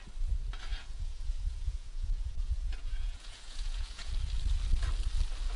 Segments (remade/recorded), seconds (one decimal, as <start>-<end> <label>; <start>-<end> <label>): 0.0-0.7 recorded; 0.7-4.1 remade; 4.1-5.6 recorded